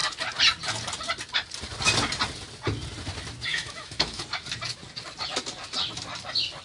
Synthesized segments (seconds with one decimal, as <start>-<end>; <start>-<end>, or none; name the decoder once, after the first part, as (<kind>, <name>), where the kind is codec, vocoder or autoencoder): 3.5-4.2 (autoencoder, DAC-VAE)